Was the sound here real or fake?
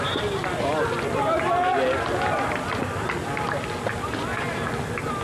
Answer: real